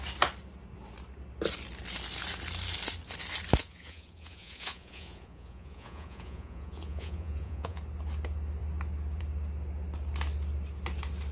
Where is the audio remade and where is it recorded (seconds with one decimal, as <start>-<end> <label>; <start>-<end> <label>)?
0.0-3.6 recorded; 3.6-7.8 remade; 7.8-11.3 recorded